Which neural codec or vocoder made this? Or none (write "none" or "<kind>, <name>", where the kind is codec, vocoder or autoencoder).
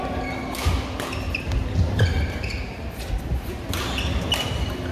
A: none